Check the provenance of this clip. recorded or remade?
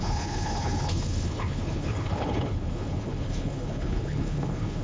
remade